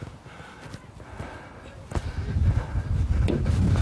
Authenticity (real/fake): real